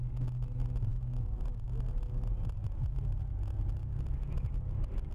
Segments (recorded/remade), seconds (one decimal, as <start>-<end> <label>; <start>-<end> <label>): 0.0-5.1 recorded

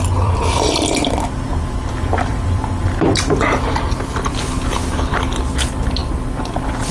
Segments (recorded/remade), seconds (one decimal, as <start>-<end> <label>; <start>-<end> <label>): 0.0-6.9 remade

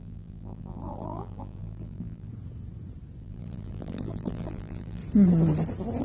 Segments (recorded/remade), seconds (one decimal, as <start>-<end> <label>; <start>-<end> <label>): 0.0-2.3 remade; 2.3-3.2 recorded; 3.2-5.0 remade; 5.0-6.0 recorded

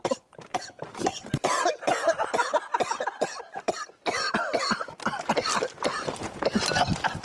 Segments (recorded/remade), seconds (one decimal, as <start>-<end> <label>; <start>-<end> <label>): 0.0-1.1 recorded; 1.1-2.2 remade; 2.2-2.7 recorded; 2.7-4.4 remade; 4.4-7.2 recorded

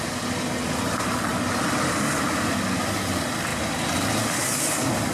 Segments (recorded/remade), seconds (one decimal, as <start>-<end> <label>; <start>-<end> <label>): 0.0-5.1 remade

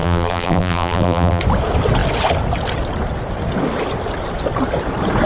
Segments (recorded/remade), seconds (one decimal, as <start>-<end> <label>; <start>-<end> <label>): 0.0-1.4 remade; 1.4-5.3 recorded

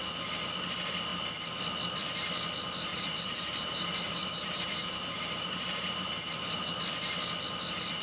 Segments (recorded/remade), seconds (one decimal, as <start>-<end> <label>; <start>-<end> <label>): 0.0-2.9 recorded; 2.9-6.7 remade; 6.7-8.0 recorded